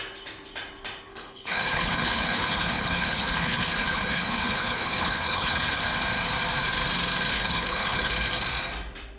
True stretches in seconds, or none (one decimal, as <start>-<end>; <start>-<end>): 0.0-1.1; 5.8-7.3; 8.1-9.2